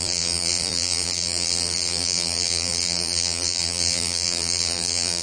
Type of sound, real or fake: fake